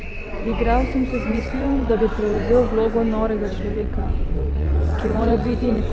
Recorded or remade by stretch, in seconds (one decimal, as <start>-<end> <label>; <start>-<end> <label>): 0.0-0.5 remade; 0.5-1.3 recorded; 1.3-2.4 remade; 2.4-3.7 recorded; 3.7-5.9 remade